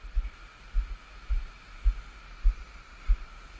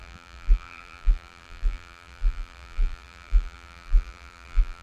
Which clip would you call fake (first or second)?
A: second